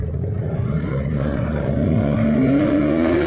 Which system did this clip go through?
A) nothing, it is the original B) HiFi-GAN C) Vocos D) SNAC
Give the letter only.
C